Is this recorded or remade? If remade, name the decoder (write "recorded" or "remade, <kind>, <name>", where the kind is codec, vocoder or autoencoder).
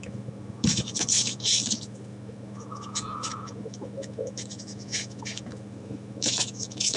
remade, autoencoder, DAC-VAE